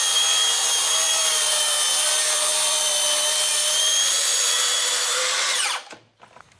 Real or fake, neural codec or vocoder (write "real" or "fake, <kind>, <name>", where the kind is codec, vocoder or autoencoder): fake, vocoder, BigVGAN v2